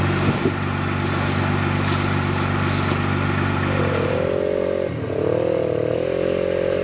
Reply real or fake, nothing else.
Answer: real